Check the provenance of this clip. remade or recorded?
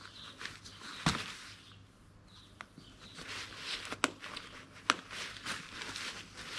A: recorded